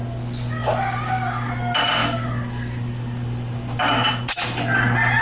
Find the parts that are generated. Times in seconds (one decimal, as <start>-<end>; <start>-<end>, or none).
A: 0.6-1.5; 2.0-4.1